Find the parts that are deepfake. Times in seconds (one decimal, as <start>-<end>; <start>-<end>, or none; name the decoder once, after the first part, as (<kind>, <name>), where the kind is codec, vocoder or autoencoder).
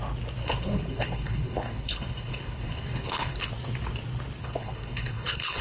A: 0.4-3.5 (codec, HILCodec); 4.4-5.6